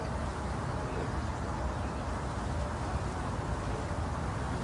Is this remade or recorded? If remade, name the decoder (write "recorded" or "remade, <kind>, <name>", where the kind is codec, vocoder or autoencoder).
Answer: recorded